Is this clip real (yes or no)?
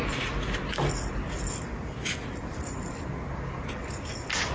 no